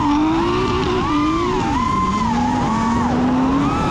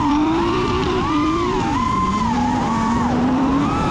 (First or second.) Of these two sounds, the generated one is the second